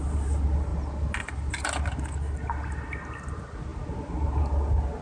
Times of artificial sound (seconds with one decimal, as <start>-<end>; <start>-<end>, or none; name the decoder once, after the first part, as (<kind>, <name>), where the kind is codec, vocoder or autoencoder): none